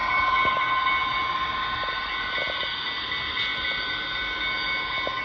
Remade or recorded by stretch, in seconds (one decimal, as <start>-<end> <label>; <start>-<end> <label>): 0.0-5.2 recorded